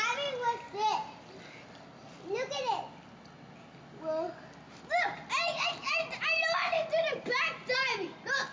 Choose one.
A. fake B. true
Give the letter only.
B